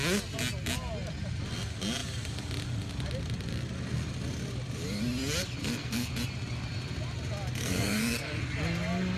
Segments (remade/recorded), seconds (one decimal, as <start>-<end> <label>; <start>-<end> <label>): 0.0-5.6 recorded; 5.6-6.1 remade; 6.1-7.6 recorded; 7.6-8.4 remade; 8.4-9.2 recorded